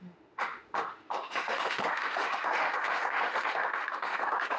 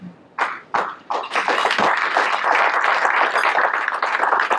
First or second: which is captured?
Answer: second